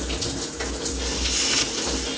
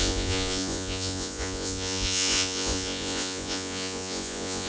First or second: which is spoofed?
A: second